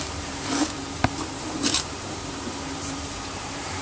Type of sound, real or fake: fake